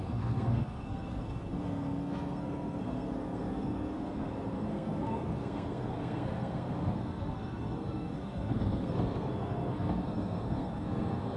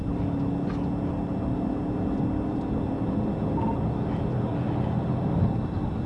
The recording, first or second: second